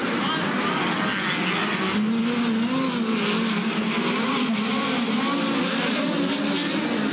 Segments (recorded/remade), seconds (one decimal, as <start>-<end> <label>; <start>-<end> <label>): 0.0-7.1 recorded

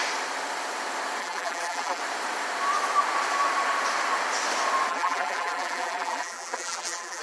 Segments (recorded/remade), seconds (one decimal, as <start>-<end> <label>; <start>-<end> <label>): 0.0-1.2 recorded; 1.2-2.0 remade; 2.0-4.9 recorded; 4.9-7.2 remade

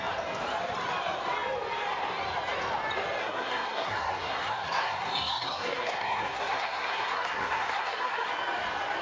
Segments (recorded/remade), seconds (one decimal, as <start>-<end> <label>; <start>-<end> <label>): 0.0-3.2 recorded; 3.2-8.3 remade; 8.3-9.0 recorded

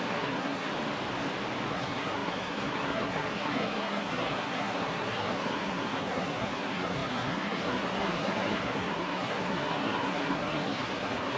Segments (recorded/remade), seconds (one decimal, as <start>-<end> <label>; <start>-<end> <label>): 0.0-0.7 remade; 0.7-1.7 recorded; 1.7-11.4 remade